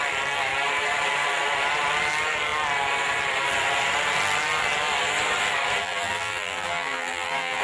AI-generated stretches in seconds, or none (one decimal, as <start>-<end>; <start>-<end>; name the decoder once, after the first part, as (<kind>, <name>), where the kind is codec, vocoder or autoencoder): 5.8-7.6 (vocoder, BigVGAN v2)